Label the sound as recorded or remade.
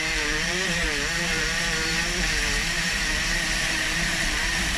remade